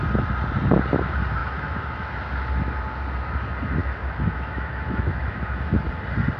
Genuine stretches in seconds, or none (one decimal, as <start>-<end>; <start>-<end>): 0.0-1.4; 2.1-3.8; 5.9-6.4